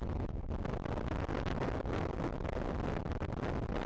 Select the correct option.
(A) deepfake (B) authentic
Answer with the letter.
B